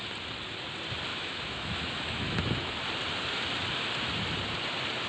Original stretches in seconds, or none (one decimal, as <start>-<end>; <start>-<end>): 0.0-1.1; 2.8-5.1